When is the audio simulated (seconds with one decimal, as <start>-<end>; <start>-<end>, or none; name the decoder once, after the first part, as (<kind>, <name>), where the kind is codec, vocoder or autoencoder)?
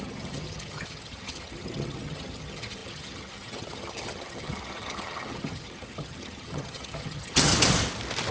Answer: 0.0-7.5 (vocoder, HiFi-GAN)